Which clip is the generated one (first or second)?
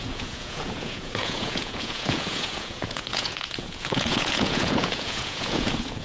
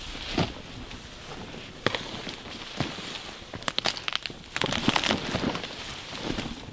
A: first